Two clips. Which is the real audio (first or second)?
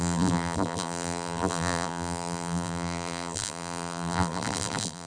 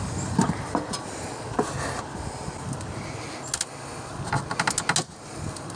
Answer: second